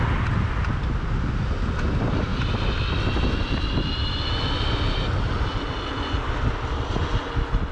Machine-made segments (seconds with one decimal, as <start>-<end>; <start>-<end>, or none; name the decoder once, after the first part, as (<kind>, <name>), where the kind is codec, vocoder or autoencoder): none